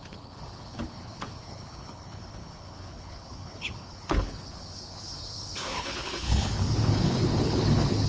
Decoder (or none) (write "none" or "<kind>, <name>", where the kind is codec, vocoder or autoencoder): codec, HILCodec